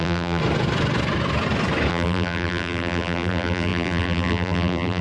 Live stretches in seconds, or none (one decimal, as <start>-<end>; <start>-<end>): 0.4-1.9